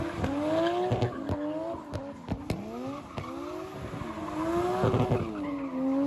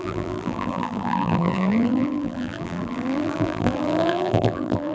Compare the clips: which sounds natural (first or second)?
first